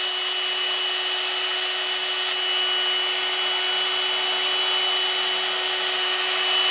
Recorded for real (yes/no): yes